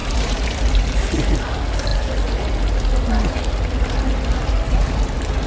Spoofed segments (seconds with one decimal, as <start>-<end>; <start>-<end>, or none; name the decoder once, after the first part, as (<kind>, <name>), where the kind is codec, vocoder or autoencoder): 0.0-0.7 (vocoder, BigVGAN v2)